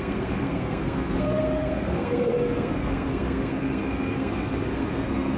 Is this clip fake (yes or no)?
yes